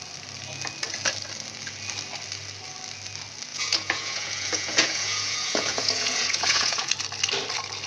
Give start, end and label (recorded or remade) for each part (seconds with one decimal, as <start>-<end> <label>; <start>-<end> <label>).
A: 0.0-3.5 recorded; 3.5-6.9 remade; 6.9-7.9 recorded